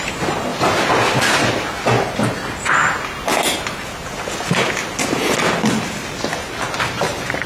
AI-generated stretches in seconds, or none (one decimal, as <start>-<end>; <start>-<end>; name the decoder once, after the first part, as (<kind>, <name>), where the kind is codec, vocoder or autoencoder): none